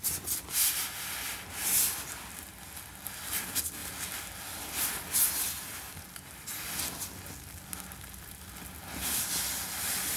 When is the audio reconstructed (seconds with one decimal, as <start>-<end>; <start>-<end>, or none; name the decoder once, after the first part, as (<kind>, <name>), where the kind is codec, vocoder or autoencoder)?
none

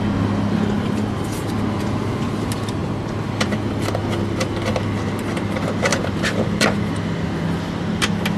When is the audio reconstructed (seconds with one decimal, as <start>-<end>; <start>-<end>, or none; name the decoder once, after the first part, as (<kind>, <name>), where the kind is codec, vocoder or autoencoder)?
2.8-3.6 (vocoder, BigVGAN v2); 5.9-6.9

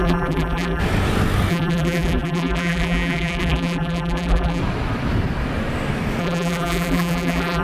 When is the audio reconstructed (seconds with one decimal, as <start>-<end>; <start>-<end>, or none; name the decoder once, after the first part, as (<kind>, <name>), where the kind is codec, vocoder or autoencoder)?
0.0-0.8 (vocoder, BigVGAN v2); 1.5-4.6; 6.2-7.6

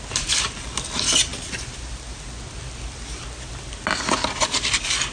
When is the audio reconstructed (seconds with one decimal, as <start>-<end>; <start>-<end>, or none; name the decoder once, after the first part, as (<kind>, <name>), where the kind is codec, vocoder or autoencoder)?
none